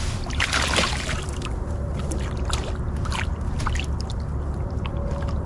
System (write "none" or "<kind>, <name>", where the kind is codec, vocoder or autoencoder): none